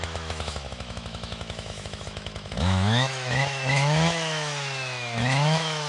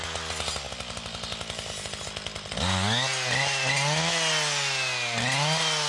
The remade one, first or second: first